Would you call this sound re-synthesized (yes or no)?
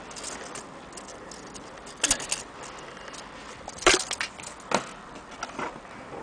no